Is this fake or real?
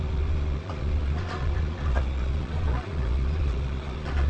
fake